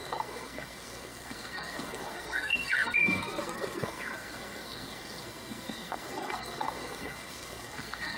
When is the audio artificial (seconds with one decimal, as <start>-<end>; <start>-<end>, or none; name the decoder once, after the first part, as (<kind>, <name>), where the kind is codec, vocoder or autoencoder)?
0.0-8.2 (codec, SNAC)